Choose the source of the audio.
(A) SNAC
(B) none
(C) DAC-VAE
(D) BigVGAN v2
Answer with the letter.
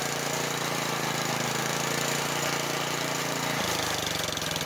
B